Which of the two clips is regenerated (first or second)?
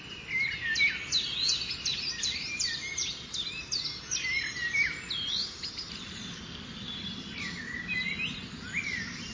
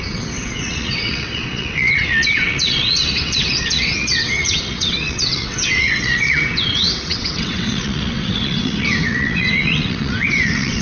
second